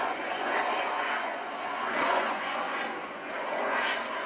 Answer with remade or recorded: remade